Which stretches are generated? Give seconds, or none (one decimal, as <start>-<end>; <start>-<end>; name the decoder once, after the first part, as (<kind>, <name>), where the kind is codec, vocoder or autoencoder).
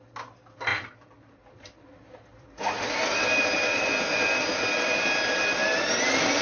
0.7-1.3 (vocoder, BigVGAN v2); 2.3-3.8